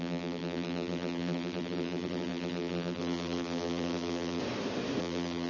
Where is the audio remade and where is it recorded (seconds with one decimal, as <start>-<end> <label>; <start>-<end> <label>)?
0.0-4.4 remade; 4.4-5.0 recorded; 5.0-5.5 remade